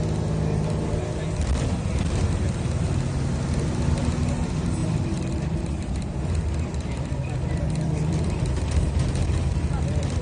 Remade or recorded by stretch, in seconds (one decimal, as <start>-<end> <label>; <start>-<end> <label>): 0.0-4.8 recorded; 4.8-8.9 remade; 8.9-10.2 recorded